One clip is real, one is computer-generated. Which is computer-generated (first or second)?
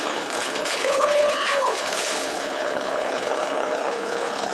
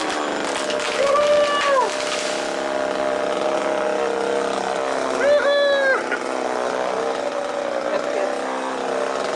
first